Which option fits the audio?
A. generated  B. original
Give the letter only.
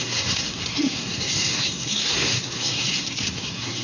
A